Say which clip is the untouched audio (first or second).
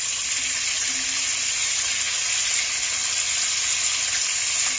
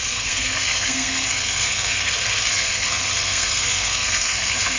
first